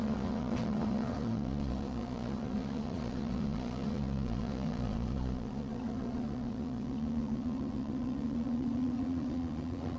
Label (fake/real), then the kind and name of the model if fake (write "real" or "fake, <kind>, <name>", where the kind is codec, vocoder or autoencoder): fake, vocoder, Vocos